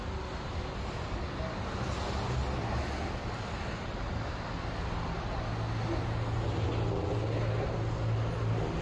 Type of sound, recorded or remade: recorded